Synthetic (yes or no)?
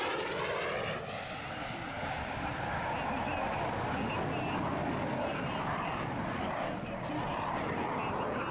no